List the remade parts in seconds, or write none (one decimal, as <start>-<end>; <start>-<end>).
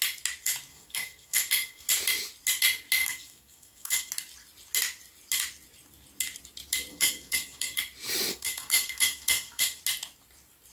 0.7-1.9; 3.0-4.1; 6.9-7.8; 8.3-9.8